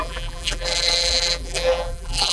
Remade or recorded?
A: remade